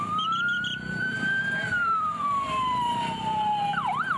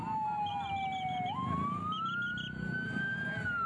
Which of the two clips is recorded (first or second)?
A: second